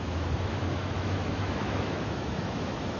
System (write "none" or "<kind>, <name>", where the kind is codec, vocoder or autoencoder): autoencoder, DAC-VAE